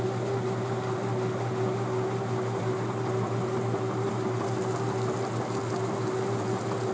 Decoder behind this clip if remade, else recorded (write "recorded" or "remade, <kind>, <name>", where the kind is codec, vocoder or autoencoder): recorded